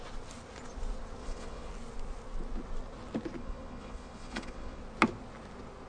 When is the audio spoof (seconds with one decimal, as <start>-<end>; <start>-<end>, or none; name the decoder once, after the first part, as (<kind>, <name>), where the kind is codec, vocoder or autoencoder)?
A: 1.2-1.7 (vocoder, Vocos); 3.4-4.8